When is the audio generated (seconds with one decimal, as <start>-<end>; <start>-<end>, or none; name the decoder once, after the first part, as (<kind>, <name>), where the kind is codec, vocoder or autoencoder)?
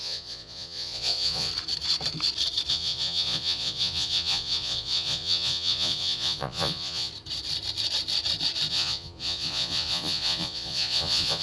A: 0.0-1.5 (vocoder, Vocos); 2.7-7.1; 8.7-11.4